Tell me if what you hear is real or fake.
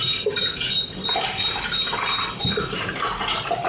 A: real